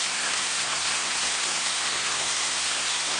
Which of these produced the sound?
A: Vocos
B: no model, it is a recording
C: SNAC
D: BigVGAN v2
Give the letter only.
C